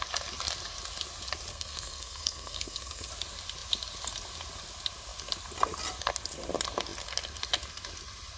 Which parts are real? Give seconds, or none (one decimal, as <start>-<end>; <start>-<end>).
0.0-1.5; 3.1-8.4